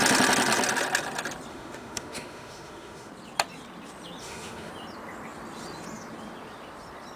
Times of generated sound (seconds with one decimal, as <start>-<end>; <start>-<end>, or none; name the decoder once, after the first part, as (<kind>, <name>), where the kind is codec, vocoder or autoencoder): 1.5-3.1 (autoencoder, DAC-VAE); 4.2-4.7